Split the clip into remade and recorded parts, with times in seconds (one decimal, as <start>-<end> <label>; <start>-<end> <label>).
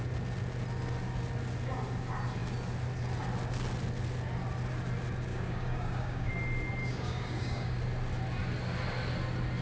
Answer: 0.0-5.3 recorded; 5.3-6.3 remade; 6.3-6.8 recorded; 6.8-7.8 remade; 7.8-9.6 recorded